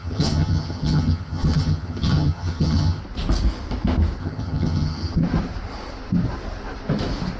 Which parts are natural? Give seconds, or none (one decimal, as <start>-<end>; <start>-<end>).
3.0-4.2; 5.2-7.4